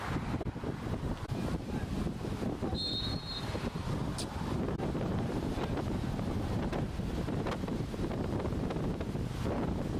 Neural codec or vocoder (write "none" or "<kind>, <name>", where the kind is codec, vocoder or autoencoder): vocoder, BigVGAN v2